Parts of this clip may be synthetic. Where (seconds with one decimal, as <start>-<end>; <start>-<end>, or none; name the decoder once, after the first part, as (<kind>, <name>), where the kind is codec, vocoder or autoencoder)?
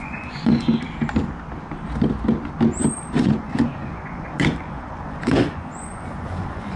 0.0-0.7 (vocoder, Vocos); 3.1-6.8